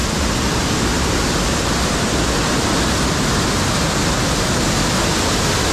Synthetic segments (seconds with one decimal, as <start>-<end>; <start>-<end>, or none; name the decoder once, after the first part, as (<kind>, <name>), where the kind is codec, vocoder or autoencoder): none